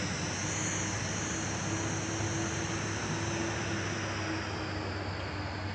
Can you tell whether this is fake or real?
real